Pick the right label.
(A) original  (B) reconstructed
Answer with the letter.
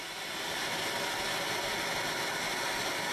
A